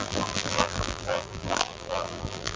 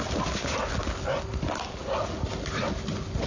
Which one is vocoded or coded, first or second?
first